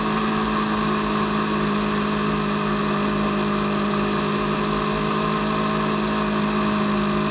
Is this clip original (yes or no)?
yes